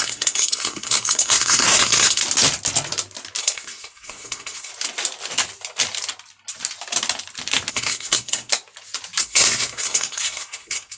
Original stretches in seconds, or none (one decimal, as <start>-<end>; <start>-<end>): 2.2-3.4; 4.7-7.7; 8.5-9.2